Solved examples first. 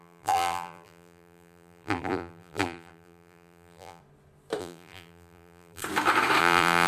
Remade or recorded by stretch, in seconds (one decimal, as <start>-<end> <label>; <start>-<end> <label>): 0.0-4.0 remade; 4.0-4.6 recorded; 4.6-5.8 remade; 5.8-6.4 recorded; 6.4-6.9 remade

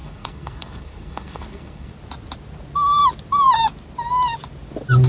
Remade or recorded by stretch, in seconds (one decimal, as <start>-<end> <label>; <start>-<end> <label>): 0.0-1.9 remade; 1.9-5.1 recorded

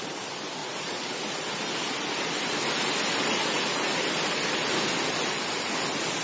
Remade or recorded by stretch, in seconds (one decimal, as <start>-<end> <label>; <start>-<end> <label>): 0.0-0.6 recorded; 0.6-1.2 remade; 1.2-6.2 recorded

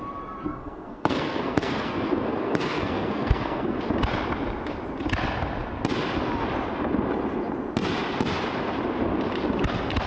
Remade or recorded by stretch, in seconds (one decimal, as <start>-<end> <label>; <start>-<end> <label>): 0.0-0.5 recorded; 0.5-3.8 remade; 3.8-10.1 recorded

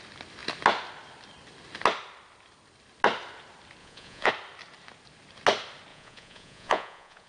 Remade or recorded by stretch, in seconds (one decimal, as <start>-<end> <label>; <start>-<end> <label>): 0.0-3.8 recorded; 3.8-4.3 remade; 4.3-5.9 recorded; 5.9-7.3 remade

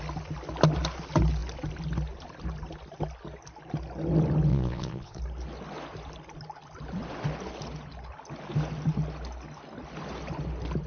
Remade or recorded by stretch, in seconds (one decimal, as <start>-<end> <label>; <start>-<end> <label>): 0.0-4.5 recorded; 4.5-5.2 remade; 5.2-10.9 recorded